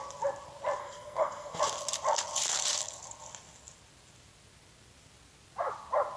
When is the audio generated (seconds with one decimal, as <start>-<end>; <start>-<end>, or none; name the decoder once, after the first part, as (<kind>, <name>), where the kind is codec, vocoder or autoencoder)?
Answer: 0.8-1.6 (codec, SNAC)